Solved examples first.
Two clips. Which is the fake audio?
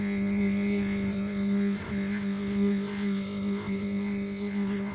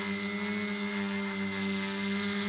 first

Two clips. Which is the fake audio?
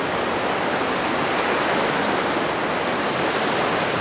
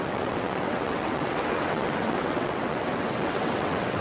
second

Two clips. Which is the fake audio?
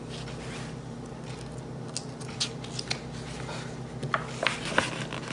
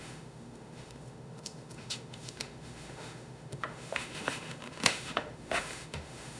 second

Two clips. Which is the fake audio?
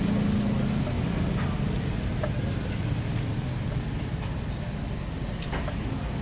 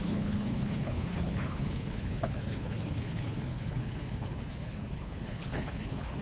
second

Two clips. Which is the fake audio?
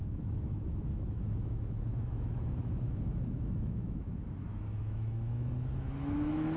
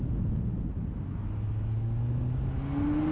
first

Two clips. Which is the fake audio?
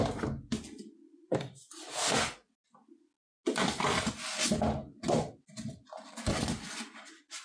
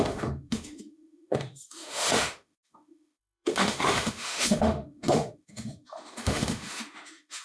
second